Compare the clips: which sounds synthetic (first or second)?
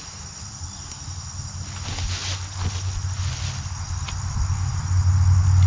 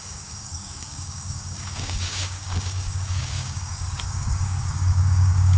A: second